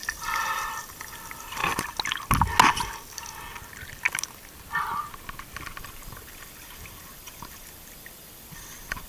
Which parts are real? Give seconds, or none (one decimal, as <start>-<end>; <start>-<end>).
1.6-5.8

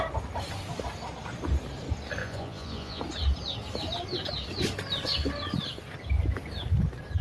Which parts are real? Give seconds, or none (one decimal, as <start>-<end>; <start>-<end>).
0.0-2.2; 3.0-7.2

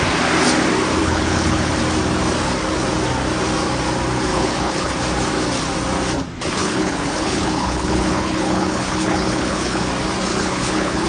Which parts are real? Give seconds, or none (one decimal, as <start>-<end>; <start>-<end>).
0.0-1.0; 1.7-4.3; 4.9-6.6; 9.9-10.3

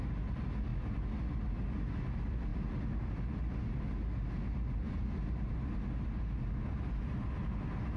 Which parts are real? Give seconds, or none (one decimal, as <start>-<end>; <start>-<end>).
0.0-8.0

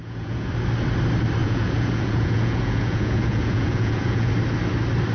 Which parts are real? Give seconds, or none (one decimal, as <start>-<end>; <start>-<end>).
0.5-1.4; 4.3-5.1

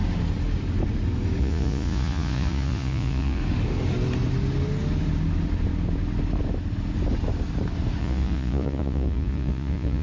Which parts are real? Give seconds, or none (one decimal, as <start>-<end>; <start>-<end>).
0.0-1.4; 3.4-8.0

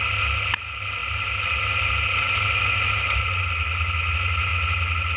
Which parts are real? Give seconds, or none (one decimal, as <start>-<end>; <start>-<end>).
0.0-5.2

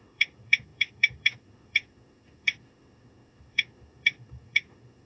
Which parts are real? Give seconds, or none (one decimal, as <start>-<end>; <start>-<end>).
none